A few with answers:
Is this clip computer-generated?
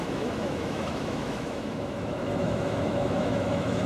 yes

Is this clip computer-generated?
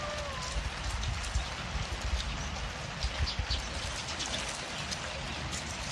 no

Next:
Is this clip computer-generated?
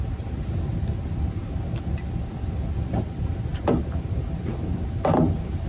no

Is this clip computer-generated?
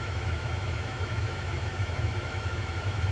yes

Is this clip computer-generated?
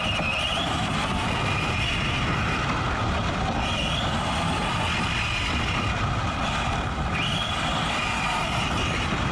no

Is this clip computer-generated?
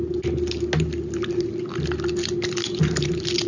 no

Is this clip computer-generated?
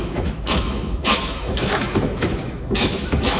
yes